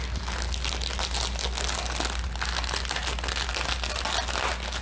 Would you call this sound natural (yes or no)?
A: yes